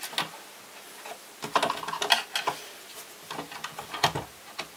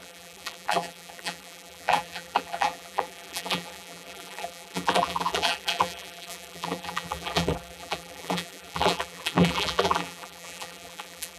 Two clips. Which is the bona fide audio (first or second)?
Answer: first